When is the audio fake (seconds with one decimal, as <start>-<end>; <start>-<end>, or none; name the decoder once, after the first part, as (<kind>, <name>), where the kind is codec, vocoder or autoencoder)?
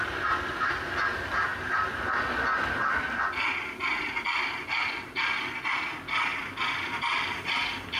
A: 6.3-8.0 (vocoder, BigVGAN v2)